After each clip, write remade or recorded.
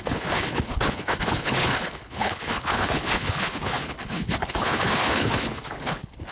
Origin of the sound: remade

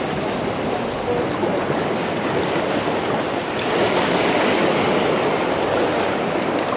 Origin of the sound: recorded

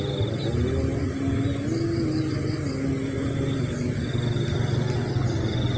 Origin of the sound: recorded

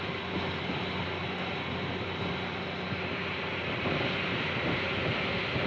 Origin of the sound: recorded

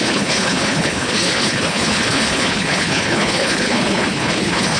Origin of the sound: remade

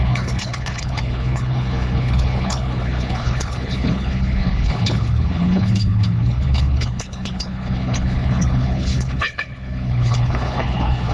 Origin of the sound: remade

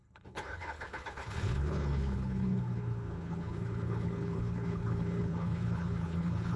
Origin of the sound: remade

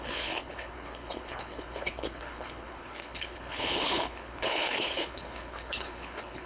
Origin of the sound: remade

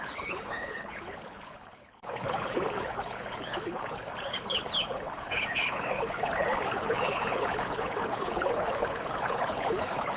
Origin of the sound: remade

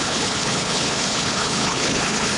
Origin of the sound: remade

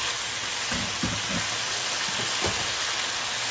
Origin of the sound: recorded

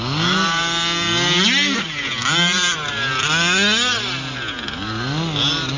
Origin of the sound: recorded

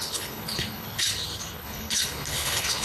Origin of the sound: remade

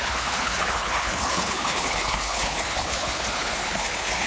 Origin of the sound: remade